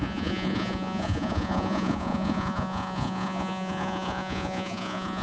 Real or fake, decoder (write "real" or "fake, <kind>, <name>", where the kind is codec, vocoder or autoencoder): fake, vocoder, Vocos